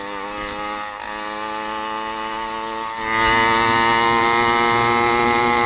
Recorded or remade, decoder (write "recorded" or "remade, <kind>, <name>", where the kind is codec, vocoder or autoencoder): recorded